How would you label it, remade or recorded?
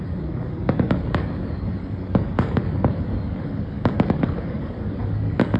remade